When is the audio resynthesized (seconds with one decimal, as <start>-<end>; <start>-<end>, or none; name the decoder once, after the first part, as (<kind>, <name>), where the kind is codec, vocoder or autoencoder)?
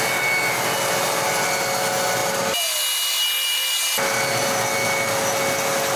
none